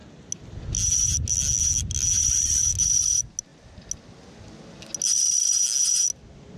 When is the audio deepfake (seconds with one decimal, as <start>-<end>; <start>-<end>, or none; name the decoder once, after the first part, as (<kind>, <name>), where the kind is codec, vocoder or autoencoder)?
none